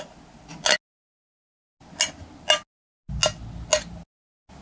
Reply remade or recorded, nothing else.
recorded